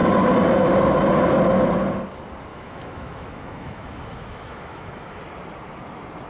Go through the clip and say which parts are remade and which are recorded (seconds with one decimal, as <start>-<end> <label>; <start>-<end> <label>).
0.0-2.5 recorded; 2.5-5.2 remade; 5.2-6.3 recorded